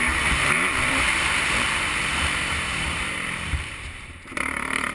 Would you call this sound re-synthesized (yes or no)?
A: yes